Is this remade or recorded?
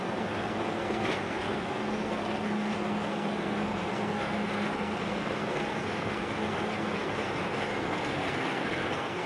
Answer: remade